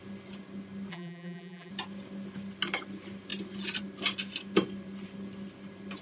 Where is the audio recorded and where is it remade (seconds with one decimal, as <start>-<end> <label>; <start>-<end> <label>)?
0.0-0.9 recorded; 0.9-1.7 remade; 1.7-6.0 recorded